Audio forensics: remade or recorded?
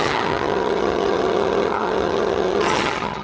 remade